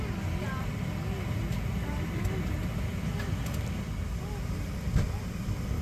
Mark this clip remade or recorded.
recorded